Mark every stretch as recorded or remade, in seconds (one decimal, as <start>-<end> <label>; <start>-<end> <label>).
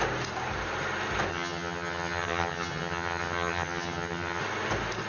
0.0-1.3 recorded; 1.3-4.4 remade; 4.4-5.1 recorded